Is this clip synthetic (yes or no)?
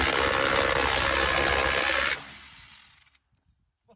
no